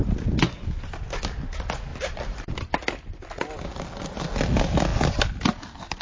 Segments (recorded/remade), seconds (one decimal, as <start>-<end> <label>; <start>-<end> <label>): 0.0-1.9 recorded; 1.9-2.5 remade; 2.5-6.0 recorded